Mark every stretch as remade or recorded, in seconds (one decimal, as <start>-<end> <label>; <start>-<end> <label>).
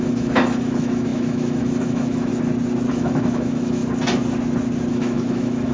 0.0-2.3 remade; 2.3-2.9 recorded; 2.9-3.8 remade; 3.8-4.9 recorded; 4.9-5.7 remade